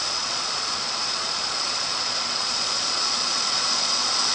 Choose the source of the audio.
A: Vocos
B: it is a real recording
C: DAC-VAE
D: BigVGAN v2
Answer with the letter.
A